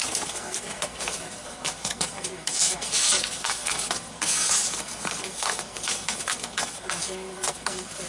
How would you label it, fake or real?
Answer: fake